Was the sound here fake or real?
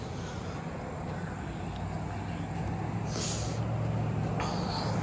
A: real